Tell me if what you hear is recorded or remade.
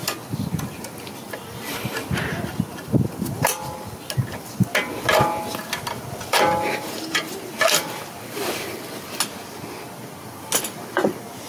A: recorded